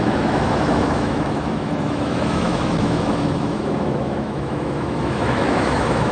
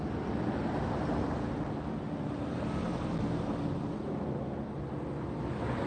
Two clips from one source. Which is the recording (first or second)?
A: second